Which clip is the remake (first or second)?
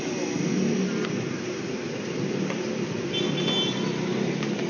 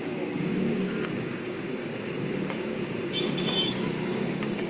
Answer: second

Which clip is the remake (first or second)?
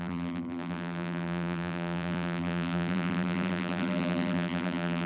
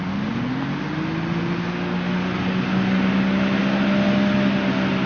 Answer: first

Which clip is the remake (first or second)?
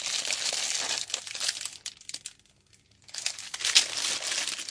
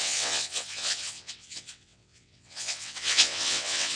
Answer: second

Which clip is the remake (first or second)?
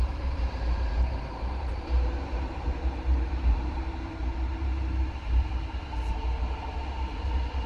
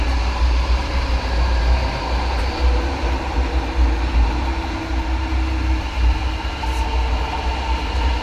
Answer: first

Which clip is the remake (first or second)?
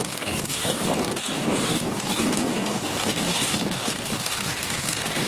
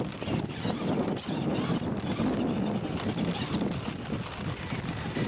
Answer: first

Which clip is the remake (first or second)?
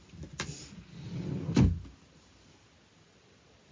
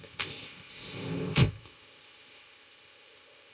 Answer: second